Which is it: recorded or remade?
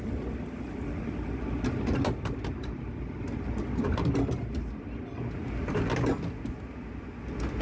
recorded